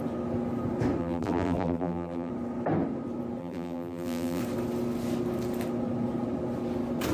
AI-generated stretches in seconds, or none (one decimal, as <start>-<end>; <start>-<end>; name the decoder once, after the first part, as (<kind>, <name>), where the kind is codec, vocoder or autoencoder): 1.0-2.3 (vocoder, BigVGAN v2); 3.4-4.4